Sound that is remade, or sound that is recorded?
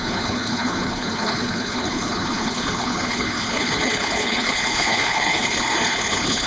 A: remade